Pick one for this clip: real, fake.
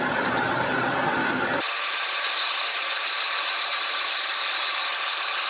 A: fake